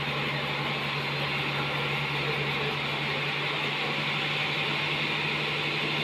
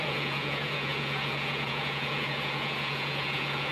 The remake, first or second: second